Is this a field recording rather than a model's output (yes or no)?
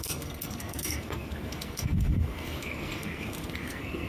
no